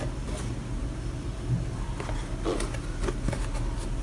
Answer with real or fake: real